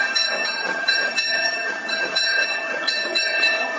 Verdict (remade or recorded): remade